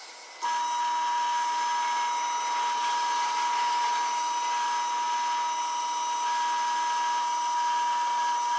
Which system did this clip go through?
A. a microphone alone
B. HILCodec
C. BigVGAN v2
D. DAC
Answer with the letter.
A